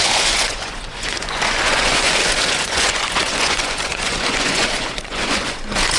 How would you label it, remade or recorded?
remade